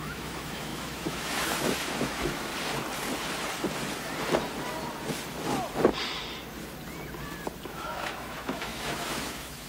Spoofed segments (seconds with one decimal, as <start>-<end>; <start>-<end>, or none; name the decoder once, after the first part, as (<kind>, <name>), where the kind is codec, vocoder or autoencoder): 0.0-2.5 (autoencoder, DAC-VAE); 7.7-9.7